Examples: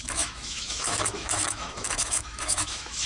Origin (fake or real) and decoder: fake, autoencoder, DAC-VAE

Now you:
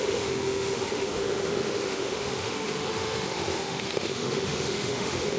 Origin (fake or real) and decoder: fake, autoencoder, DAC-VAE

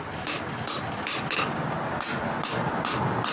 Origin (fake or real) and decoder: real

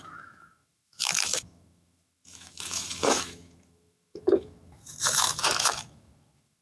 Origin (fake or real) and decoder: fake, autoencoder, DAC-VAE